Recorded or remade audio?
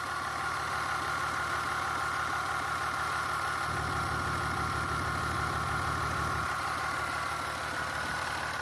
recorded